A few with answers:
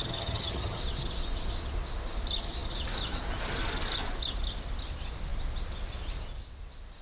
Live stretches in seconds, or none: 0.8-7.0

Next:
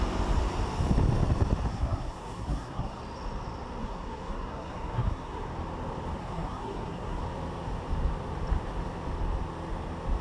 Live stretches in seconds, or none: 0.0-1.7; 3.0-3.8; 5.5-6.2; 7.2-10.2